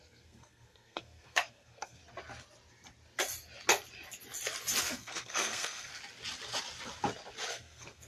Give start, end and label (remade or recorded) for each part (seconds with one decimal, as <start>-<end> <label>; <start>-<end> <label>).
0.0-2.0 remade; 2.0-4.8 recorded; 4.8-5.9 remade; 5.9-7.5 recorded; 7.5-8.1 remade